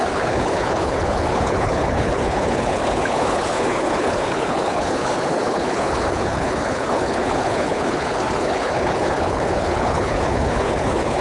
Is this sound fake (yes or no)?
yes